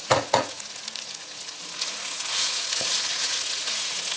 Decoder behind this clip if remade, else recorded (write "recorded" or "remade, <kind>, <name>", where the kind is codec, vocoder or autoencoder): remade, vocoder, Vocos